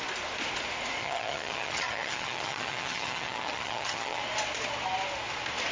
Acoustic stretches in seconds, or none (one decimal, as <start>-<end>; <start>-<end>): 0.0-1.0; 4.2-5.7